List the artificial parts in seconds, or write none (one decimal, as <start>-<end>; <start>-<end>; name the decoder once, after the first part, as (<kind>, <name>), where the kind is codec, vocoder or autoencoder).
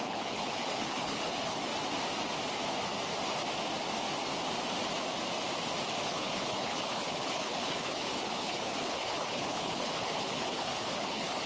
0.0-1.7 (codec, HILCodec); 6.0-11.5